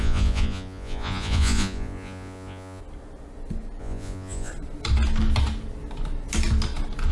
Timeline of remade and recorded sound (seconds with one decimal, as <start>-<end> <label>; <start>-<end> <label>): 0.0-2.8 remade; 2.8-3.8 recorded; 3.8-4.5 remade; 4.5-7.1 recorded